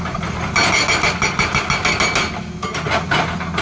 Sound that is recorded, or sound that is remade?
recorded